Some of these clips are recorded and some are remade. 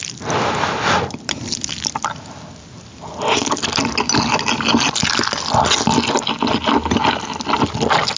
recorded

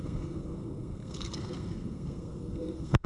remade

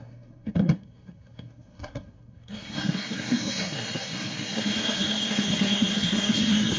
remade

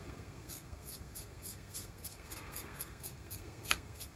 remade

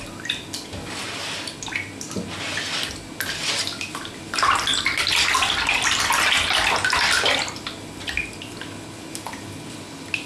recorded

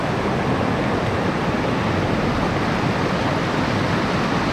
recorded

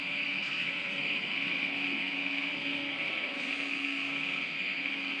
remade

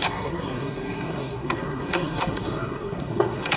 remade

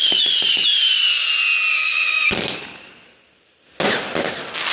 recorded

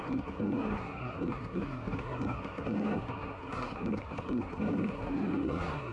remade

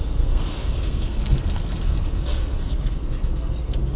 remade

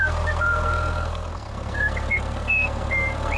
remade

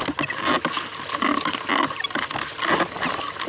recorded